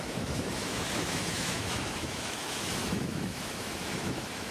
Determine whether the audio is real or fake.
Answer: fake